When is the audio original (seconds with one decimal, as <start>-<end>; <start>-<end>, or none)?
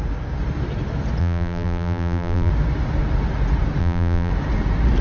0.0-1.2; 2.5-3.8; 4.3-5.0